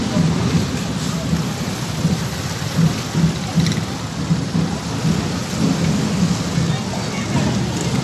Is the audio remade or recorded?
recorded